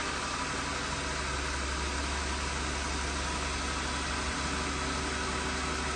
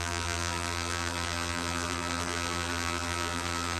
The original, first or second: first